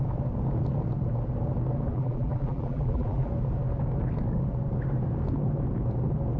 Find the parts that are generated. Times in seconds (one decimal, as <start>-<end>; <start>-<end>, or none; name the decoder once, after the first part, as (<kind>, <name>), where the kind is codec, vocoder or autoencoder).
1.9-3.3 (vocoder, BigVGAN v2)